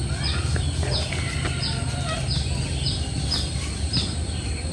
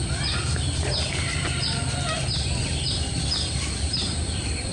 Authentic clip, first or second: first